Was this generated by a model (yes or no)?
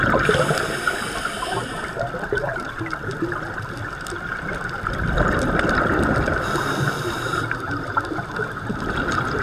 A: yes